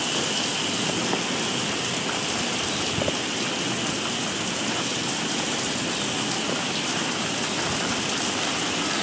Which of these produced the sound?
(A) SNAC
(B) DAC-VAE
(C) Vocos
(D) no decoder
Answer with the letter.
D